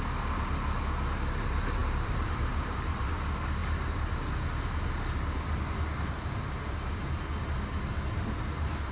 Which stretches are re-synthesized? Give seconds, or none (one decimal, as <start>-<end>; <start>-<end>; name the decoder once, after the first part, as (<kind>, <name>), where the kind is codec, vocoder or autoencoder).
1.8-3.1 (vocoder, BigVGAN v2); 3.6-4.2